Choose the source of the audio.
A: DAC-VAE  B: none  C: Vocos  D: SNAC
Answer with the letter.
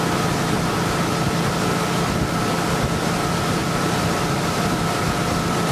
B